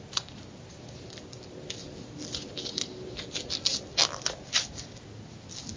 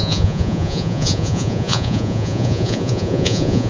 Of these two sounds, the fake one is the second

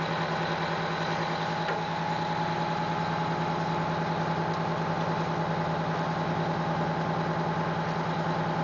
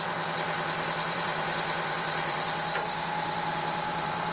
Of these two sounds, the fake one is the second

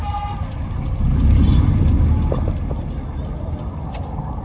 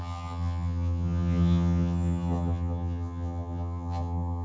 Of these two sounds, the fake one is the second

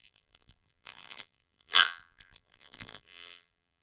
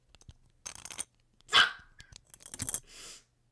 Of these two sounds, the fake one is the first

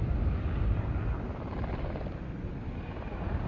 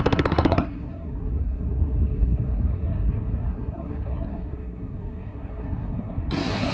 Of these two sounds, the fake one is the second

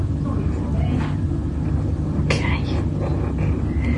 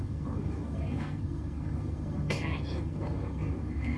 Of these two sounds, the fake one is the second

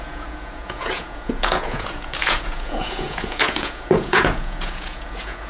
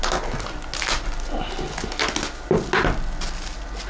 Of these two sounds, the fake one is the first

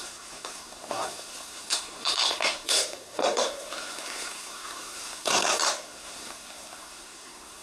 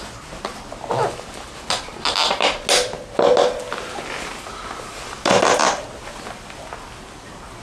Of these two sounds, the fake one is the first